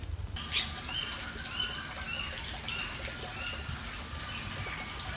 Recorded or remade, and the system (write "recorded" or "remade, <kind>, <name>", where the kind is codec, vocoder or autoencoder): recorded